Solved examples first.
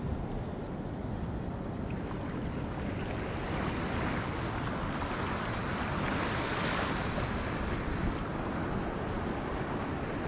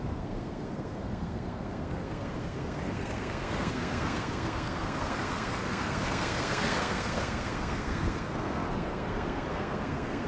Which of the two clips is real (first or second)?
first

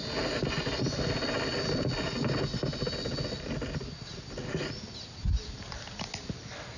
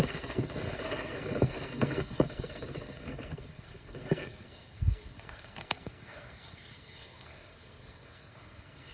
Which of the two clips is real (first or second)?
first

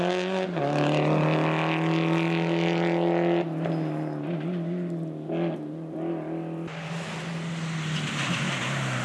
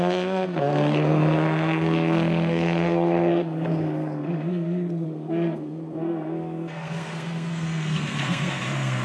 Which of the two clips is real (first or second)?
first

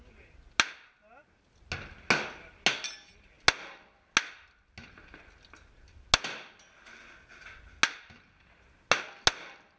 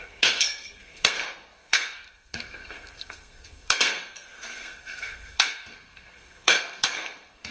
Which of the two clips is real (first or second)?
first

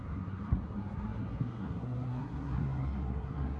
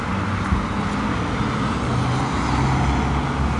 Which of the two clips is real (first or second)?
second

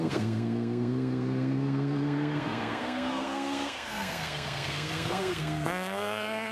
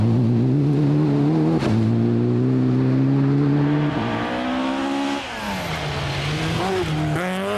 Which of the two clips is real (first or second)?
second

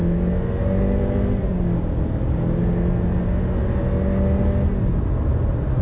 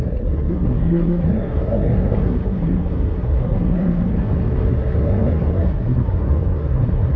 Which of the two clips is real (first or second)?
first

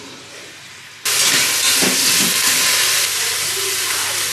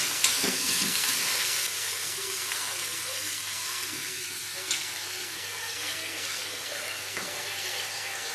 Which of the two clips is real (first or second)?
first